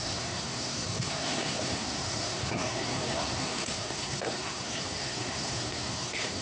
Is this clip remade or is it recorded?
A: remade